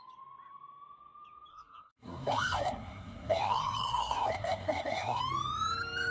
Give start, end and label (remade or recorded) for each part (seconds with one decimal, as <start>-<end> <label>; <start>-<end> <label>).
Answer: 0.0-1.5 recorded; 1.5-5.2 remade; 5.2-6.1 recorded